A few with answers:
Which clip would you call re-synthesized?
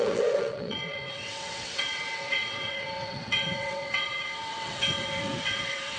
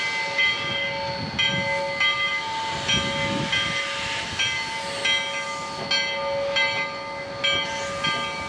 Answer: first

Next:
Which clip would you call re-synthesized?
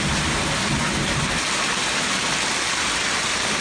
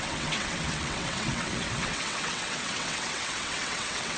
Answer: second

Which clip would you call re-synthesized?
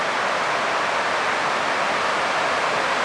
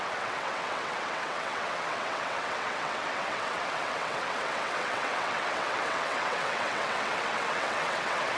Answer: second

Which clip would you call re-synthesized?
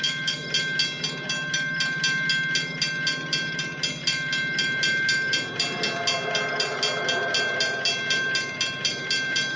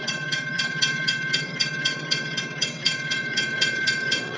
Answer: second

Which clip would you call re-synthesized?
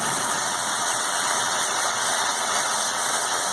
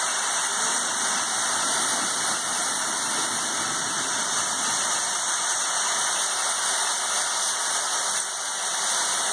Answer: first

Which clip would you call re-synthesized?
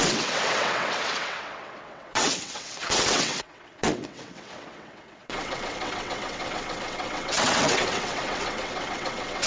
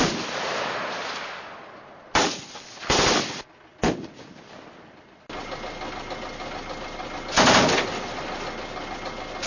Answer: first